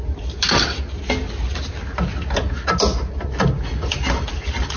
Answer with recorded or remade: recorded